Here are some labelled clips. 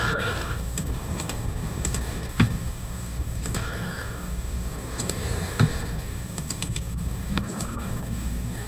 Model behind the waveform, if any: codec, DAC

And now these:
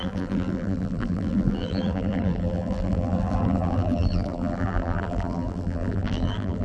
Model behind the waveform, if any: vocoder, BigVGAN v2